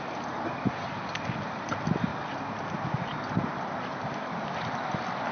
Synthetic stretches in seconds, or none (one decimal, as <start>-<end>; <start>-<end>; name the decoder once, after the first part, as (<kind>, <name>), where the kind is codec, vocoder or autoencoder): none